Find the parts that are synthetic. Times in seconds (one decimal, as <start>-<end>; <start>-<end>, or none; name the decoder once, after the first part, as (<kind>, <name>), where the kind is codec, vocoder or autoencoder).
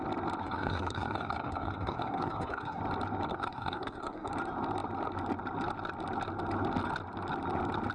0.4-2.8 (codec, SNAC); 3.3-4.3